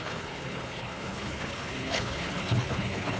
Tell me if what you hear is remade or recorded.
remade